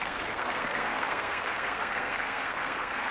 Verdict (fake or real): fake